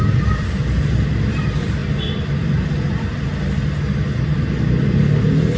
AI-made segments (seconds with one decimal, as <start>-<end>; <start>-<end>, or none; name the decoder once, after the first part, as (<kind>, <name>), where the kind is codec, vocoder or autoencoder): none